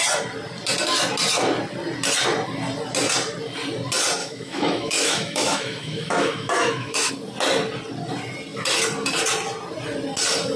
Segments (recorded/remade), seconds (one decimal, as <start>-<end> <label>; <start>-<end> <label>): 0.0-4.2 recorded; 4.2-7.1 remade; 7.1-10.6 recorded